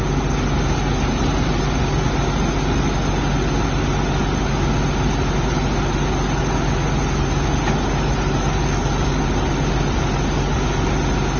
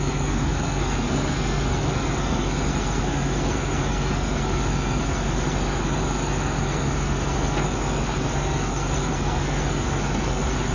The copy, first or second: second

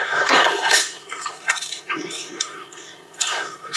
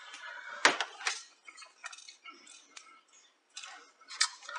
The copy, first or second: first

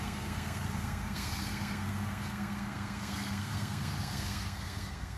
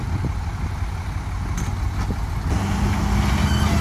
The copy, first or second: first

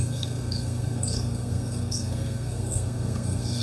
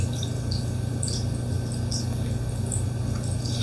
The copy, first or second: first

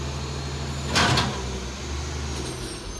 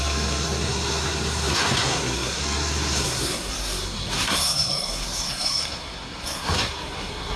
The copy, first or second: second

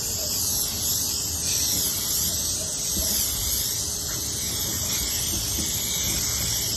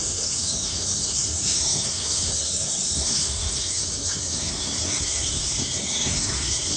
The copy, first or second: second